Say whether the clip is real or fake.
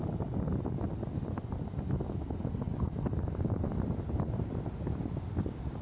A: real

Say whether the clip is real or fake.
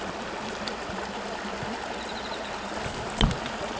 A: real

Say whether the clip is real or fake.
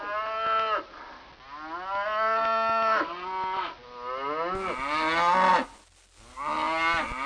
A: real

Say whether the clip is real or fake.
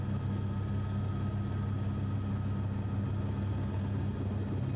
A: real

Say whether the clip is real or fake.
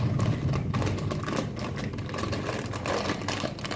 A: real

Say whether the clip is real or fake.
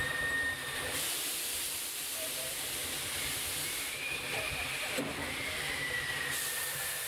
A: fake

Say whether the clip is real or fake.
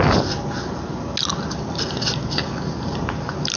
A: real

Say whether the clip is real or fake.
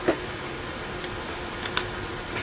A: real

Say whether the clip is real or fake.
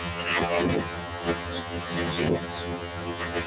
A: fake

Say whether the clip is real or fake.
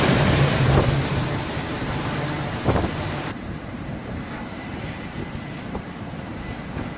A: fake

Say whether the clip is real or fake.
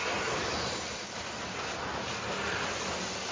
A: real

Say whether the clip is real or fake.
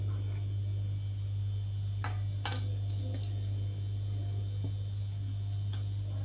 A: real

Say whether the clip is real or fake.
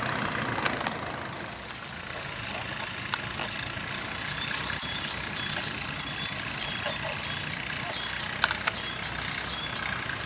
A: real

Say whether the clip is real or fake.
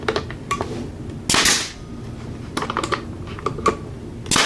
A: real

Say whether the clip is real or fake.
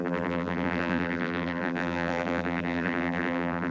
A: fake